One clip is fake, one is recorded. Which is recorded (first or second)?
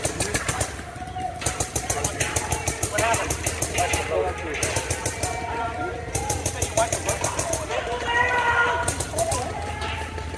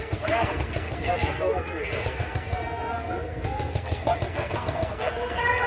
first